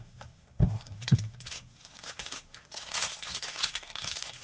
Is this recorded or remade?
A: remade